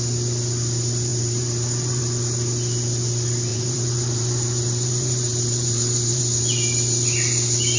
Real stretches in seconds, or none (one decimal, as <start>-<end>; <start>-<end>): 0.0-1.1; 2.0-3.5; 6.2-7.8